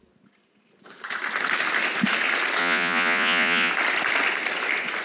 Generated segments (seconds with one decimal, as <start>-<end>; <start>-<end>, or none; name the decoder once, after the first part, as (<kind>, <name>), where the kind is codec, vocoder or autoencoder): 2.6-3.7 (vocoder, Vocos)